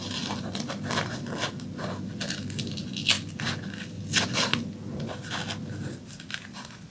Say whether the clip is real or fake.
real